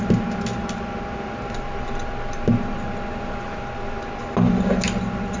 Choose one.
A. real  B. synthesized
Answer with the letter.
A